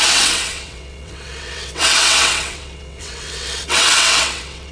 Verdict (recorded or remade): remade